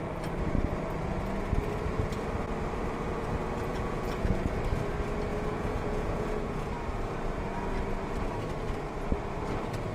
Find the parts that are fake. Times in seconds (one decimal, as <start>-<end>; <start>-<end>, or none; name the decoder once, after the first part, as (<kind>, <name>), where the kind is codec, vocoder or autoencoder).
3.7-4.6 (vocoder, Vocos); 5.3-6.7